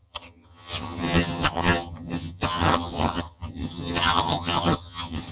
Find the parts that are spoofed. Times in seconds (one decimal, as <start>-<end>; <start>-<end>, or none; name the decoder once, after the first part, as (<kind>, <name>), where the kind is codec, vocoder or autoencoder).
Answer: 0.0-5.3 (vocoder, HiFi-GAN)